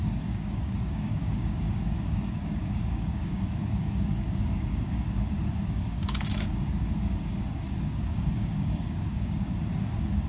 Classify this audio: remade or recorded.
remade